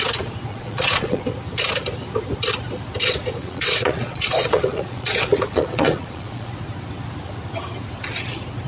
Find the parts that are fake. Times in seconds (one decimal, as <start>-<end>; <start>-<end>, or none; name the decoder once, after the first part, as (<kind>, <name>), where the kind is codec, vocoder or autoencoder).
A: 0.5-1.2 (vocoder, Vocos); 3.4-6.5